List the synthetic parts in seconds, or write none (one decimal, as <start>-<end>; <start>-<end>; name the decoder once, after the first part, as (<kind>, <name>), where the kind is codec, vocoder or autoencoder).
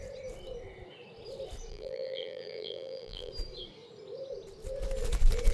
1.7-3.3 (vocoder, BigVGAN v2)